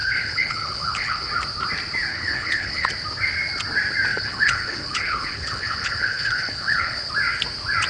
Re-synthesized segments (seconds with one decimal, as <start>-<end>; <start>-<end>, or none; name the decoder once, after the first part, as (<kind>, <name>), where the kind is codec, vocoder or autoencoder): 0.0-1.3 (codec, HILCodec); 2.1-2.9; 4.1-7.1